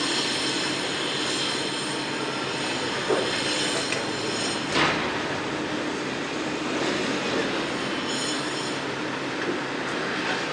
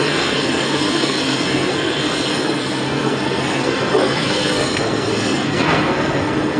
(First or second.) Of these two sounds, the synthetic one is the second